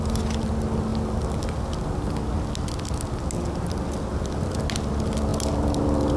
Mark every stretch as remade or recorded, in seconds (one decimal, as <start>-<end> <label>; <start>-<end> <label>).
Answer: 0.0-6.2 recorded